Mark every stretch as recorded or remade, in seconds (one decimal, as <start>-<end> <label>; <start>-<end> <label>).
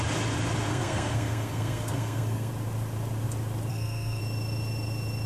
0.0-0.7 recorded; 0.7-2.5 remade; 2.5-3.7 recorded; 3.7-4.2 remade; 4.2-5.3 recorded